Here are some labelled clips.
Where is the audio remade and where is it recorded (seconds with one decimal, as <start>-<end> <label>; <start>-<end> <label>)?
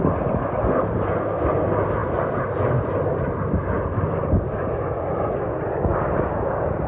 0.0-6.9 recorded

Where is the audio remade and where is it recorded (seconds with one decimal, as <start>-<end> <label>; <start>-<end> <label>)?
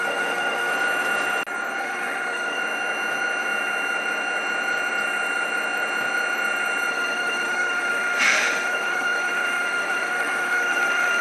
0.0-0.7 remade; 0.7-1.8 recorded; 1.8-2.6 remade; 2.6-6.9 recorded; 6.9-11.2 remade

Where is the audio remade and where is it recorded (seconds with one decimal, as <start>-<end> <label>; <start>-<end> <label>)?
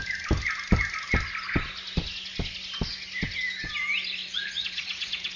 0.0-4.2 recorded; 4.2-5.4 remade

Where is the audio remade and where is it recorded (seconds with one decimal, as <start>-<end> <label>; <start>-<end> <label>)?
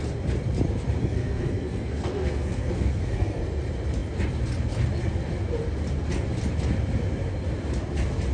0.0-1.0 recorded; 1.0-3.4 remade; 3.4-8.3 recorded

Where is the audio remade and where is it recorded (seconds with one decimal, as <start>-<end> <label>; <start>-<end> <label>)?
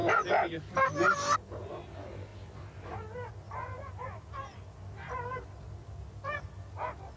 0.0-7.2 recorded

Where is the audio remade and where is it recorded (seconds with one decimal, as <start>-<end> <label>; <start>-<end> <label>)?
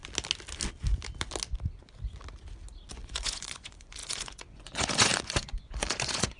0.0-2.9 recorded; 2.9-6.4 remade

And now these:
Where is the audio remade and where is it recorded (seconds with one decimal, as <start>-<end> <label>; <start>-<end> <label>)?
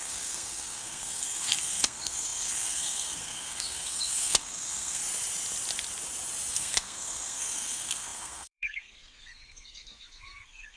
0.0-5.0 remade; 5.0-6.5 recorded; 6.5-10.8 remade